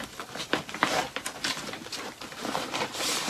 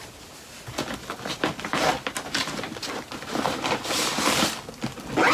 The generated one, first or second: first